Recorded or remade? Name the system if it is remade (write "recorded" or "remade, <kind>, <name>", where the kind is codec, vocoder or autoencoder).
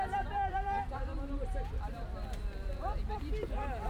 remade, vocoder, BigVGAN v2